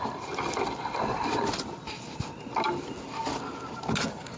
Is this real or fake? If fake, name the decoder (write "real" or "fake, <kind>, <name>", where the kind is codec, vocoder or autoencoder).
real